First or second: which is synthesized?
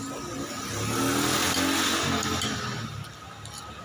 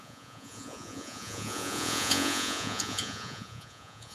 second